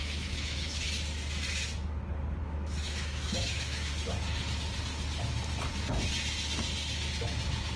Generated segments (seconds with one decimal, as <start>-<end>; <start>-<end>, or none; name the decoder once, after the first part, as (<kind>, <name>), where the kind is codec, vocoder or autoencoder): 0.0-0.9 (autoencoder, DAC-VAE); 2.4-3.9

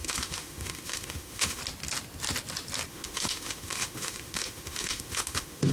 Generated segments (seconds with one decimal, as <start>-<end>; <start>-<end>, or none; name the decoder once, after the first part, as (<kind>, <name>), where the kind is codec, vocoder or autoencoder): 0.0-1.6 (autoencoder, DAC-VAE); 2.9-5.7

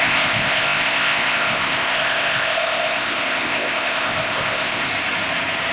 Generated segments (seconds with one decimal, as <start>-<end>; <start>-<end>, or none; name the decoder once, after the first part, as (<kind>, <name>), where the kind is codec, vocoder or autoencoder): 0.0-4.9 (codec, ZipCodec)

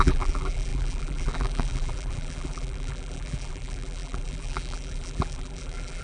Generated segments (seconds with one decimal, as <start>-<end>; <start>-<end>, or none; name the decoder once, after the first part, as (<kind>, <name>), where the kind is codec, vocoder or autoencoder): 0.0-6.0 (vocoder, BigVGAN v2)

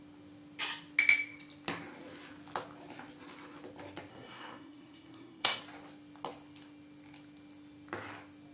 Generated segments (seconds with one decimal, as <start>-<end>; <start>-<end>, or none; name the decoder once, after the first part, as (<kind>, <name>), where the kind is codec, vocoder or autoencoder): 4.1-5.6 (codec, SNAC)

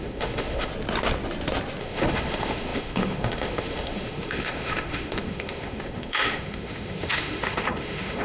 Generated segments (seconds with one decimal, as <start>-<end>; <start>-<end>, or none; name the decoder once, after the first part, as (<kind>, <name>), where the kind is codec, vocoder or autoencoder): 0.0-0.7 (autoencoder, DAC-VAE); 1.8-8.2

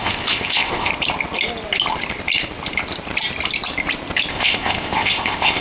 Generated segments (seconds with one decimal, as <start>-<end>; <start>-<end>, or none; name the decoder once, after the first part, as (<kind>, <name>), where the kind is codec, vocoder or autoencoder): 0.0-0.9 (codec, ZipCodec); 4.3-5.6